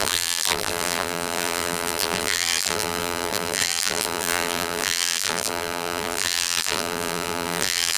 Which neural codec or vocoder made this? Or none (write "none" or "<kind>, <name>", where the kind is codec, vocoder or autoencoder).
vocoder, BigVGAN v2